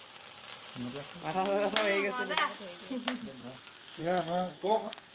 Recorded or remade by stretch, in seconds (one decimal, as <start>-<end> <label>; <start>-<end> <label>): 0.0-4.0 recorded; 4.0-5.1 remade